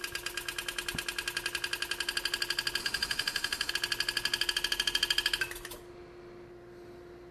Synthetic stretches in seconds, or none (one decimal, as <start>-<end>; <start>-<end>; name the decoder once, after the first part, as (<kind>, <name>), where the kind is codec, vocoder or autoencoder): 2.8-3.7 (autoencoder, DAC-VAE)